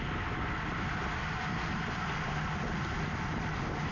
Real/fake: real